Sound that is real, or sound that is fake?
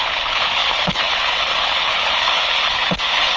fake